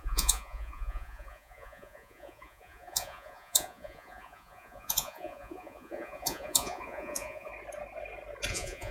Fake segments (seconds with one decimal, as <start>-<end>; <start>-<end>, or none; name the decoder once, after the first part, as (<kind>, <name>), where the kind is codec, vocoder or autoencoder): 0.0-7.5 (vocoder, Vocos); 8.5-8.9